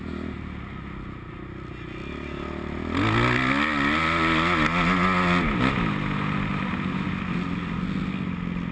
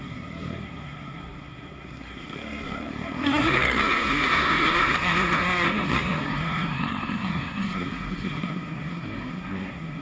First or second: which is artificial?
second